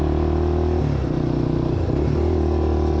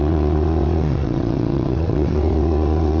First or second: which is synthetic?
second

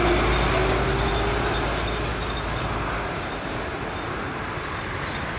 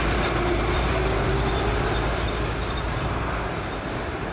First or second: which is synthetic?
second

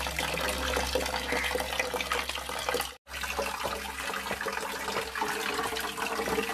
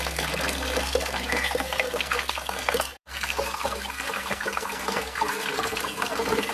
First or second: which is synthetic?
second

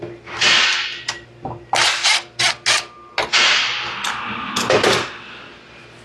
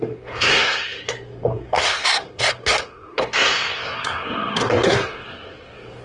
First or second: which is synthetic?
second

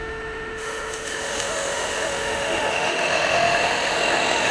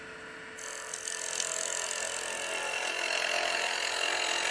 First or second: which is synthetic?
first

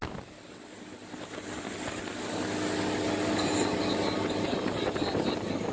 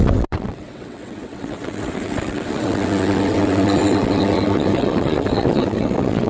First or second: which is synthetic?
second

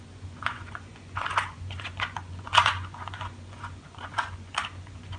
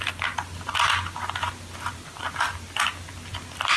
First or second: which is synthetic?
first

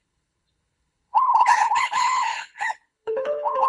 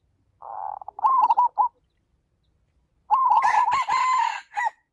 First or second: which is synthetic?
first